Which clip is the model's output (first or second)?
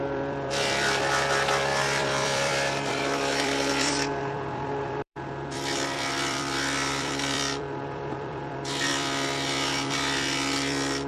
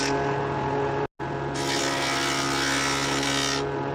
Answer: first